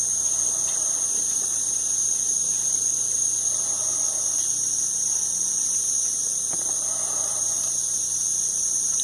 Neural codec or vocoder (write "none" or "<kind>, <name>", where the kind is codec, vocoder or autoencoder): none